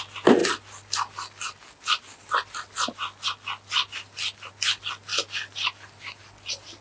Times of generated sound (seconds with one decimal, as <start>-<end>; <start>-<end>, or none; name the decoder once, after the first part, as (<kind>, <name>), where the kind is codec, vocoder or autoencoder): none